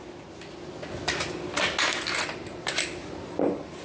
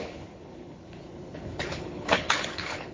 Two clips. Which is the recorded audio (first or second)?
first